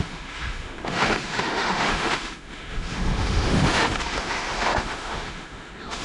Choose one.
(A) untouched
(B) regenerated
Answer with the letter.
B